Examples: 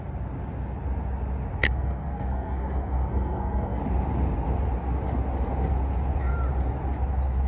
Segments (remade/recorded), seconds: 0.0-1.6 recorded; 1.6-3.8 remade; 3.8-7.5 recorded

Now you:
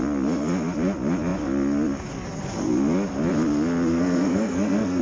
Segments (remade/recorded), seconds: 0.0-3.9 recorded; 3.9-5.0 remade

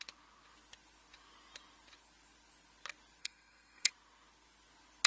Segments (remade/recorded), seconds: 0.0-3.2 recorded; 3.2-3.9 remade; 3.9-5.1 recorded

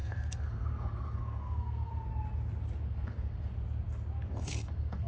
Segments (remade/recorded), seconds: 0.0-1.9 remade; 1.9-2.9 recorded; 2.9-3.5 remade; 3.5-4.3 recorded; 4.3-5.1 remade

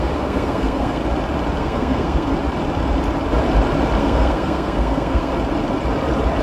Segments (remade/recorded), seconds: 0.0-1.0 remade; 1.0-1.6 recorded; 1.6-2.3 remade; 2.3-4.0 recorded; 4.0-5.3 remade; 5.3-6.4 recorded

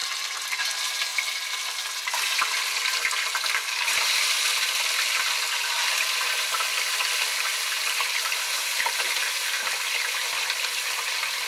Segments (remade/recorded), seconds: 0.0-11.5 recorded

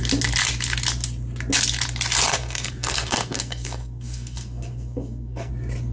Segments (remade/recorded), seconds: 0.0-2.3 recorded; 2.3-5.5 remade; 5.5-5.9 recorded

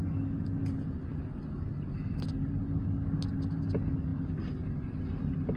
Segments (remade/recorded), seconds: 0.0-5.6 recorded